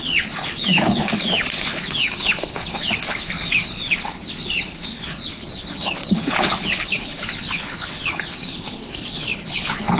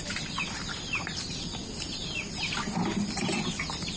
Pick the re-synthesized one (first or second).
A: first